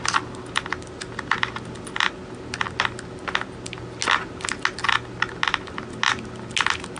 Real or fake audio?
real